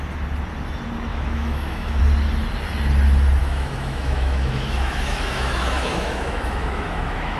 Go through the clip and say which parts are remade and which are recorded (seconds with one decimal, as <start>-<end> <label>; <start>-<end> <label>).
0.0-1.1 recorded; 1.1-2.0 remade; 2.0-3.4 recorded; 3.4-7.4 remade